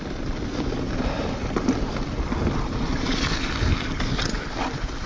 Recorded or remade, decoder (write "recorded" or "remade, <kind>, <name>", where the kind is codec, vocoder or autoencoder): recorded